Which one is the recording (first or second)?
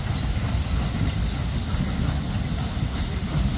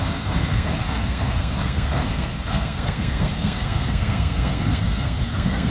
first